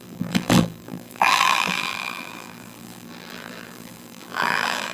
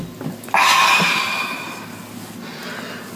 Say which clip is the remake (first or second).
first